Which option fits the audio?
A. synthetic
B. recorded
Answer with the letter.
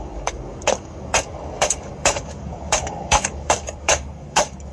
A